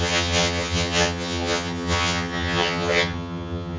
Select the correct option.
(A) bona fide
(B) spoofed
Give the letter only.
B